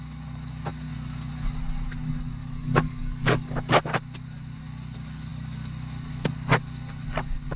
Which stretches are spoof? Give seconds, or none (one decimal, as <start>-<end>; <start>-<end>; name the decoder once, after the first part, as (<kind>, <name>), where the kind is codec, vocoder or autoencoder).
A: 2.4-3.7 (codec, DAC)